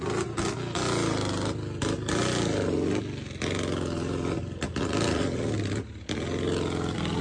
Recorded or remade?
recorded